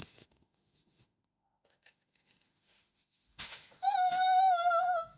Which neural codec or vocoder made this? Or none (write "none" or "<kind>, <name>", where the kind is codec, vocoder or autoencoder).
autoencoder, DAC-VAE